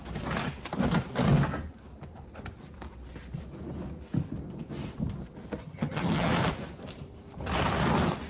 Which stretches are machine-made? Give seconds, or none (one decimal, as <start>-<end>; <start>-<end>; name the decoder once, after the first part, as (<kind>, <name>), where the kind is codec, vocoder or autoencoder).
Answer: 5.6-6.3 (vocoder, HiFi-GAN)